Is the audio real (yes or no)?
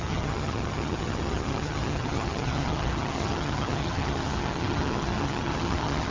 no